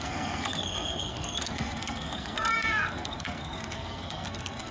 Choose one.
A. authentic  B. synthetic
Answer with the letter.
B